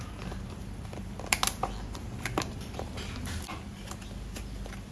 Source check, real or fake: real